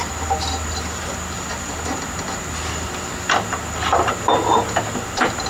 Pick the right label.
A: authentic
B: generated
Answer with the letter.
B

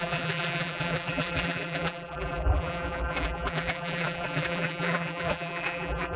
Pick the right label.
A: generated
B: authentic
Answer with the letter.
A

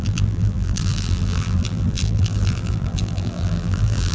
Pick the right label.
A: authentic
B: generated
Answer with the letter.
B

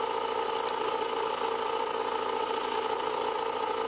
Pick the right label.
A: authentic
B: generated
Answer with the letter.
A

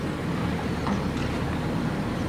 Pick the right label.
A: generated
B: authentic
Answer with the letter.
B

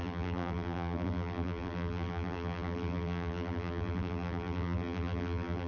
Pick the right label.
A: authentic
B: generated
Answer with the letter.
B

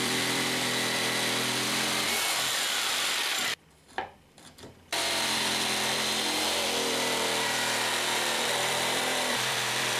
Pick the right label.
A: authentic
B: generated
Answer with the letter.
B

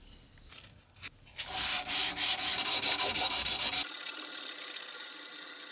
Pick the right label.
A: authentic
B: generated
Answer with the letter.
B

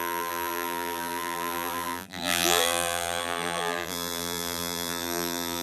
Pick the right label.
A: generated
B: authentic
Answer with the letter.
A